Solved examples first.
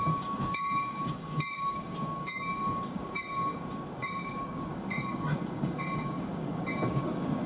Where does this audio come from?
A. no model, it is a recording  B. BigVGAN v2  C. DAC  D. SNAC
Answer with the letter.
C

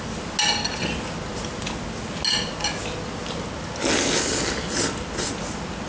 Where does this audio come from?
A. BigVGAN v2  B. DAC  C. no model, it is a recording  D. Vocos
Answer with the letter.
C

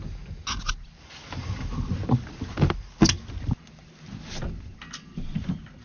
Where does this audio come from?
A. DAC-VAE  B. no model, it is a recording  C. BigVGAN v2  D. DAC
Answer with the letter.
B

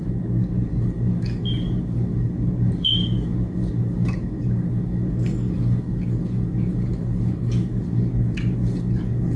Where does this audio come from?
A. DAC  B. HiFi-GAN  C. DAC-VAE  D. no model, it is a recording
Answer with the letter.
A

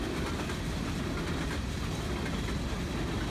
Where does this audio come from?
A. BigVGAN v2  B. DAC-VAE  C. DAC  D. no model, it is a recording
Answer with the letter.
D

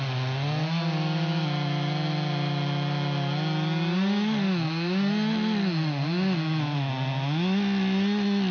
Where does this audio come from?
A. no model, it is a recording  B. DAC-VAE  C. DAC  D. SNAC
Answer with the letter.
A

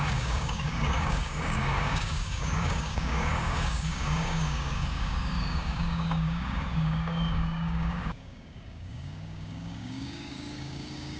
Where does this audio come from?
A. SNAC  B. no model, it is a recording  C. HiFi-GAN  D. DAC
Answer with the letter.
D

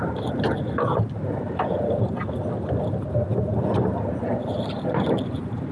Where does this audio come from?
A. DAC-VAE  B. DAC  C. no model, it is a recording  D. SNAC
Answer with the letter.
C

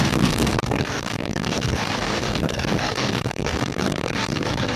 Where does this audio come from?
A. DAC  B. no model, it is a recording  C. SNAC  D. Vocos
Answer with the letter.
A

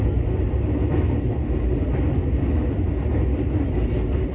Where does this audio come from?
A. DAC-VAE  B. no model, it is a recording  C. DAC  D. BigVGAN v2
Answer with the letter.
B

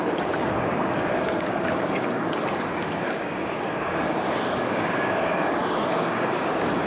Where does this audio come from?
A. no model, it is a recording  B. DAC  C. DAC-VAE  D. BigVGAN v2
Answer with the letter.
B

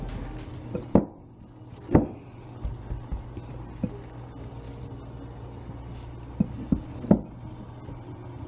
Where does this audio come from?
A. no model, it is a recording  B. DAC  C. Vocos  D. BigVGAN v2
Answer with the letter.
A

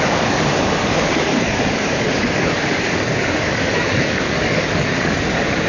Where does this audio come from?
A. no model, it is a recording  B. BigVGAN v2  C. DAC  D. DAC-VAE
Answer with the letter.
C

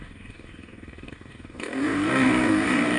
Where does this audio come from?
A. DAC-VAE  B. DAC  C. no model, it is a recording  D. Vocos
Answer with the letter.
B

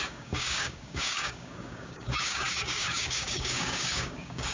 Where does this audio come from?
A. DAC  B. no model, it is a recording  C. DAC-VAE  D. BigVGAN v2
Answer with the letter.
A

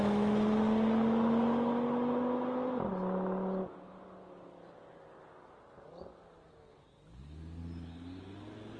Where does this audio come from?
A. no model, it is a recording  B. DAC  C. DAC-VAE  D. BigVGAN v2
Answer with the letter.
A